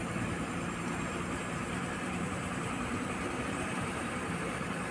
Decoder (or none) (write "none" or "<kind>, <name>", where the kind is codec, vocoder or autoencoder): vocoder, BigVGAN v2